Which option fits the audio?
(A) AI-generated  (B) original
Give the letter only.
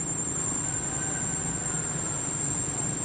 B